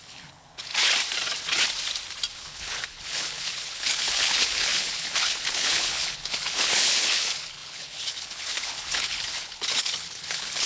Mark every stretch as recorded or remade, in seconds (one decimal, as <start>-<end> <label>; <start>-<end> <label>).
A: 0.0-0.7 remade; 0.7-2.4 recorded; 2.4-10.7 remade

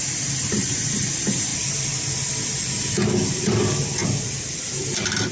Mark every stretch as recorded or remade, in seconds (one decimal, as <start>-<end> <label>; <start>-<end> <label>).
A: 0.0-5.3 recorded

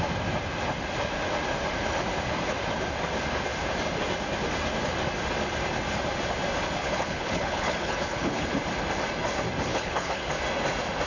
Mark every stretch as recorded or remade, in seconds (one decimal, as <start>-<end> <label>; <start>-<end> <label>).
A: 0.0-6.8 recorded; 6.8-8.5 remade; 8.5-9.7 recorded; 9.7-10.3 remade; 10.3-11.1 recorded

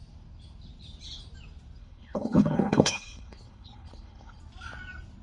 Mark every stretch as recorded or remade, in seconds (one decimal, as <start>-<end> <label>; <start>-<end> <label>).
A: 0.0-1.8 recorded; 1.8-4.4 remade; 4.4-5.2 recorded

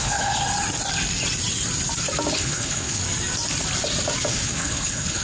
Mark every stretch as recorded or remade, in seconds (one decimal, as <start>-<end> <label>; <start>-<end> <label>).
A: 0.0-0.4 remade; 0.4-2.3 recorded; 2.3-3.0 remade; 3.0-4.3 recorded; 4.3-5.2 remade

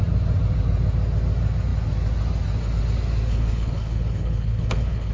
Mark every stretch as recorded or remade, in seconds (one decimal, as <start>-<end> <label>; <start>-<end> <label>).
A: 0.0-3.3 recorded; 3.3-5.1 remade

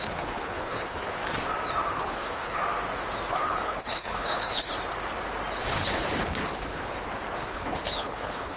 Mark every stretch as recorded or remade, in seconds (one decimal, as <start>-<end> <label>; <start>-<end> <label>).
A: 0.0-1.2 remade; 1.2-1.9 recorded; 1.9-2.6 remade; 2.6-3.3 recorded; 3.3-4.7 remade; 4.7-5.7 recorded; 5.7-6.9 remade; 6.9-7.5 recorded; 7.5-8.6 remade